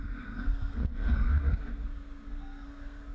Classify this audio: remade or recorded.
remade